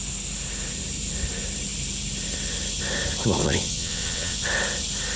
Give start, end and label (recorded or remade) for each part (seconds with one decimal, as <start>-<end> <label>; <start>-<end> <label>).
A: 0.0-3.4 recorded; 3.4-4.4 remade; 4.4-5.2 recorded